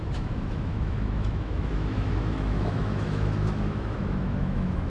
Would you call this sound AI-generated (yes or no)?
yes